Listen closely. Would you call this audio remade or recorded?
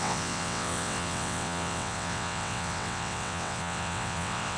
remade